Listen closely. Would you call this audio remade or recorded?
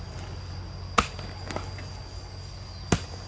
recorded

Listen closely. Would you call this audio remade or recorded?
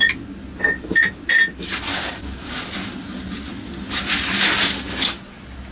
recorded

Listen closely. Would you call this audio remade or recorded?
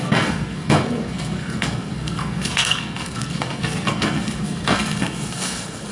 remade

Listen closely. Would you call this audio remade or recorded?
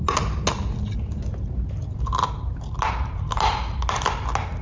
recorded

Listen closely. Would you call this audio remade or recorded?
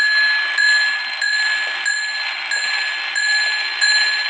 recorded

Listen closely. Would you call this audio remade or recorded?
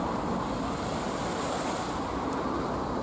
recorded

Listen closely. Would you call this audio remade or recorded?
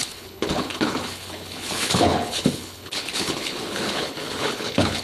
remade